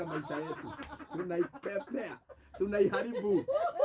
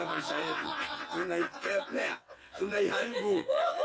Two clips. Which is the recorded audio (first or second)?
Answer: first